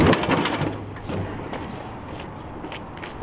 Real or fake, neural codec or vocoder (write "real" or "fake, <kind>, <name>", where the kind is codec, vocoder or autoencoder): real